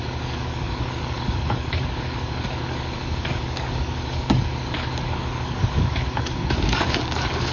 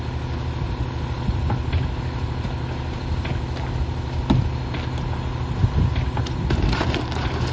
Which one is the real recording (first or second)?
second